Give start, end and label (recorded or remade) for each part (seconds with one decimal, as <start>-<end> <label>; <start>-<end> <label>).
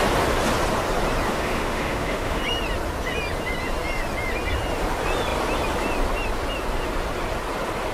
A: 0.0-1.3 recorded; 1.3-2.4 remade; 2.4-7.9 recorded